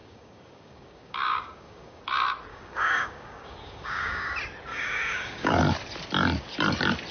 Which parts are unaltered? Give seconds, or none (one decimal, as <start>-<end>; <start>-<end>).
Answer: 2.0-2.5; 4.3-4.7; 5.5-7.1